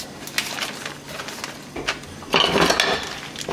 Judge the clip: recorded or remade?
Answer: recorded